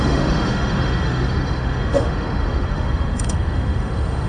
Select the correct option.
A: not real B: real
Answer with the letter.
A